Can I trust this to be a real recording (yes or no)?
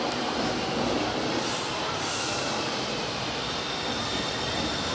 no